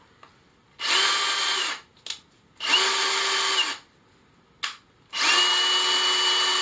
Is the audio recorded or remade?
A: recorded